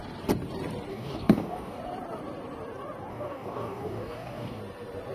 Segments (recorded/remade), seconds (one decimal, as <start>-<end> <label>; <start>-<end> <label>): 0.0-0.9 recorded; 0.9-1.8 remade; 1.8-3.1 recorded; 3.1-4.6 remade; 4.6-5.1 recorded